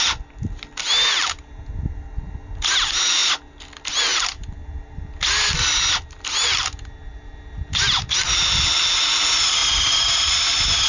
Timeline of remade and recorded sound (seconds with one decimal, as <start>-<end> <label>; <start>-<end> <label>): 0.0-10.9 recorded